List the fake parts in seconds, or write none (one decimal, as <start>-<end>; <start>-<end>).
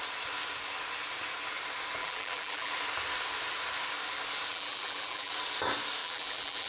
2.0-2.7; 4.5-5.3; 6.0-6.7